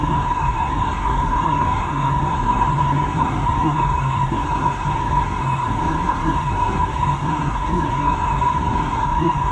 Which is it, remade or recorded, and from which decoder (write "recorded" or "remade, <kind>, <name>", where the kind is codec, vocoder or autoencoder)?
remade, codec, SNAC